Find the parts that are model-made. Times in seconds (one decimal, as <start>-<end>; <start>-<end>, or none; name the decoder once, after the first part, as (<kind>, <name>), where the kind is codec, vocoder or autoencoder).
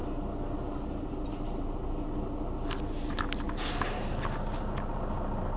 none